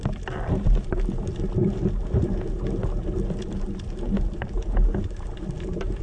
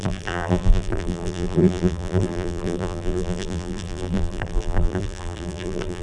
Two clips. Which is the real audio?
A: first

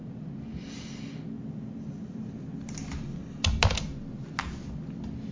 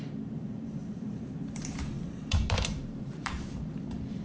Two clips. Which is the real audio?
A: first